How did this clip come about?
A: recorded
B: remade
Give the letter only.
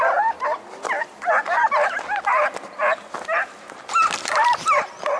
A